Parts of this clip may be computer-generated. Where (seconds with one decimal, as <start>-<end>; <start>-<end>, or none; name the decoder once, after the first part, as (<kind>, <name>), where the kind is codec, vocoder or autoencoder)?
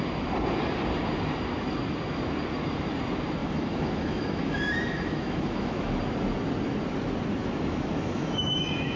3.4-5.9 (autoencoder, DAC-VAE); 7.4-9.0